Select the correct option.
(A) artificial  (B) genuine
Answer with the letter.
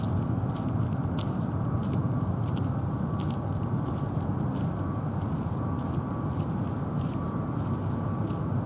B